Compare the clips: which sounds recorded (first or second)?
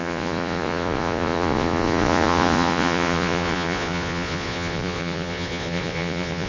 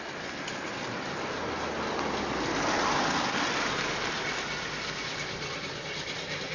second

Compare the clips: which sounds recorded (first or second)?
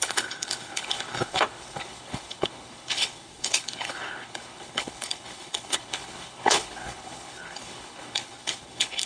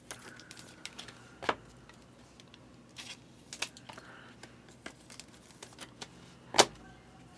second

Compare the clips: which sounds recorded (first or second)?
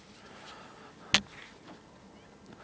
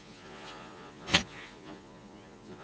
first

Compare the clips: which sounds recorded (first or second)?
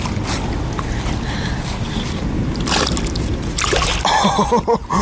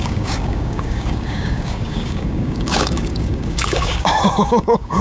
first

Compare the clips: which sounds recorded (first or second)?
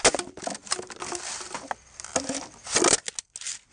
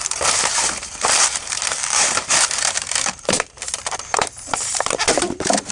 first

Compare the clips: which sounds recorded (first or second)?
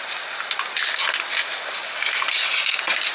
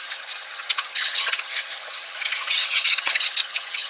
first